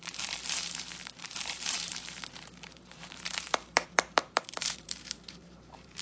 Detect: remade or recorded remade